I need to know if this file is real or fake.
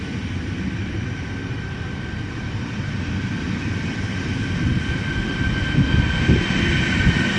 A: fake